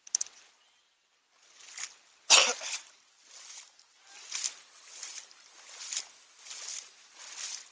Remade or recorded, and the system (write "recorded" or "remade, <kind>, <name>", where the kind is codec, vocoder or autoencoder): recorded